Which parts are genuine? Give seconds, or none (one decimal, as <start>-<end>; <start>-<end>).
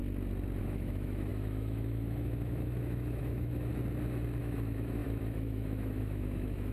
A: 0.0-0.6; 3.7-4.4